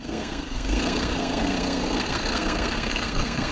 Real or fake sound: fake